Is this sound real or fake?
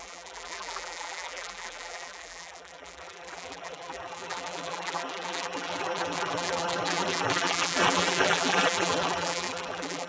fake